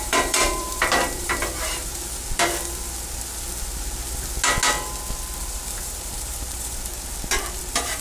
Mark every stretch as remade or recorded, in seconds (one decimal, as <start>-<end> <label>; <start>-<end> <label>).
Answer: 0.0-1.9 remade; 1.9-5.4 recorded; 5.4-6.9 remade; 6.9-7.6 recorded; 7.6-8.0 remade